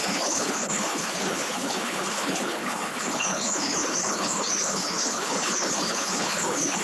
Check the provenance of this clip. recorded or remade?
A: remade